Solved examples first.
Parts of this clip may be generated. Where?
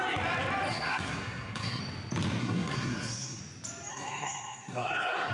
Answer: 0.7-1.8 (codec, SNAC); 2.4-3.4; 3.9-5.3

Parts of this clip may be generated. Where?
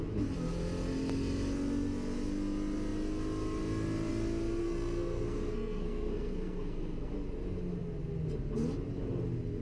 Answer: 4.6-7.1 (codec, SNAC)